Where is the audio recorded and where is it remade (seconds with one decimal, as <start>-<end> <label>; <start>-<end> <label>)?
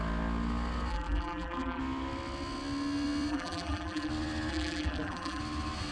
0.0-0.9 recorded; 0.9-1.8 remade; 1.8-3.3 recorded; 3.3-4.1 remade; 4.1-4.5 recorded; 4.5-5.4 remade; 5.4-5.9 recorded